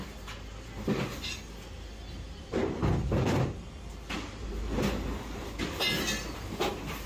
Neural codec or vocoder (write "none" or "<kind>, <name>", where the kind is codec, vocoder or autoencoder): none